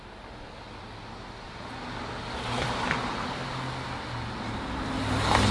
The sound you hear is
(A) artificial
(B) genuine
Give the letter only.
B